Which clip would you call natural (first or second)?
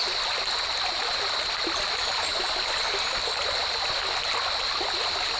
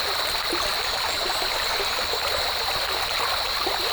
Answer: first